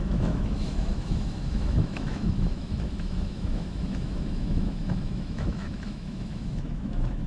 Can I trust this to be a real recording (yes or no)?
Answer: no